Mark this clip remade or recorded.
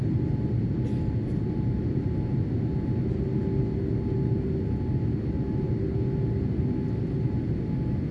recorded